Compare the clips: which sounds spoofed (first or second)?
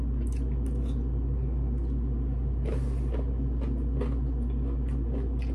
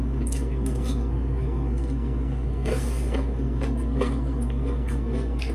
second